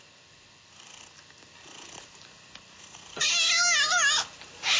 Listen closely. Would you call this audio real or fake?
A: real